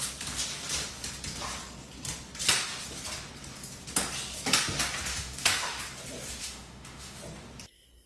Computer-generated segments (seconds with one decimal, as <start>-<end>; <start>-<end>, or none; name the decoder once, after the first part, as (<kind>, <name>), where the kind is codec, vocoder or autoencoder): 5.1-5.8 (autoencoder, DAC-VAE); 6.4-7.2